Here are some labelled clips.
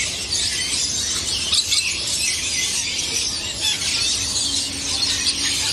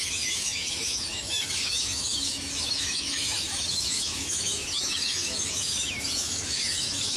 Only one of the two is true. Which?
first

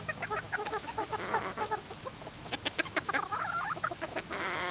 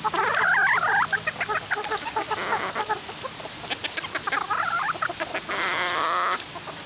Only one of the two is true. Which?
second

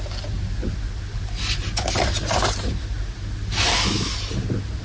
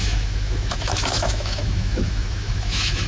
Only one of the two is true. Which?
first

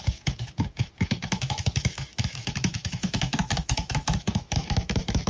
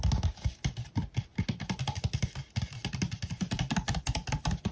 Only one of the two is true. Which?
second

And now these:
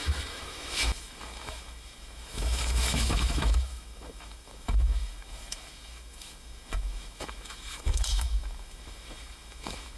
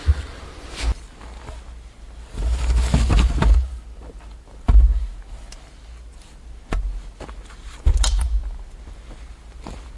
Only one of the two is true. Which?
second